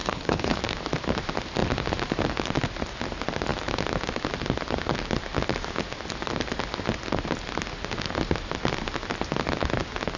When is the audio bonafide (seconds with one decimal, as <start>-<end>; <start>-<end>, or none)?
0.6-10.2